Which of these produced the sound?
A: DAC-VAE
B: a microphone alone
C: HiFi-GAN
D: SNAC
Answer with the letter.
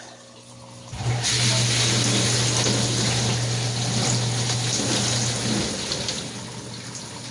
B